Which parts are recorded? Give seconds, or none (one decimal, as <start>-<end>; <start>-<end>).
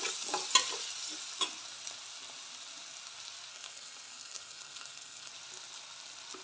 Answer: 0.0-3.5; 5.3-6.4